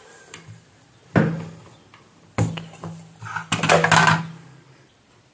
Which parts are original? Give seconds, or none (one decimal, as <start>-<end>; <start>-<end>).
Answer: 0.0-5.3